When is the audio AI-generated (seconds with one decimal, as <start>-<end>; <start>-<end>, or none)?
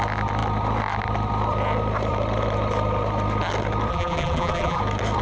3.9-4.8